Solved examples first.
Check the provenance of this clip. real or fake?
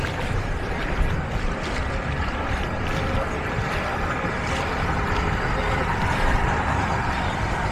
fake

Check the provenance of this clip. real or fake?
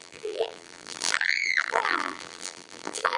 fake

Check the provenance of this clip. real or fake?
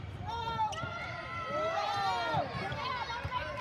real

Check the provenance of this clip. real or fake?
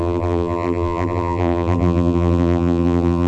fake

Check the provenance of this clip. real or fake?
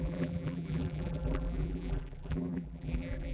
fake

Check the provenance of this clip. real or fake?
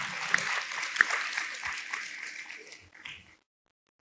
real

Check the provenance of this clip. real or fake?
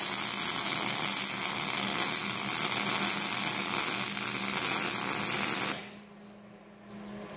real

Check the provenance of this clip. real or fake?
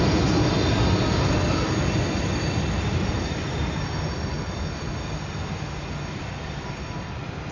real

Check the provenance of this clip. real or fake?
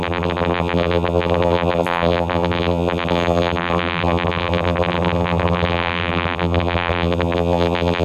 fake